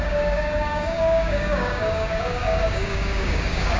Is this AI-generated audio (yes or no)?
yes